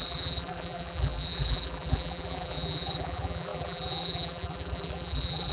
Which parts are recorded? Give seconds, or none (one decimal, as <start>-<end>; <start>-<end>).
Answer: none